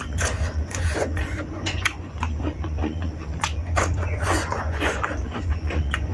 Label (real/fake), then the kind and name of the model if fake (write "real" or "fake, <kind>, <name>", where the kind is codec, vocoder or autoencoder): fake, vocoder, Vocos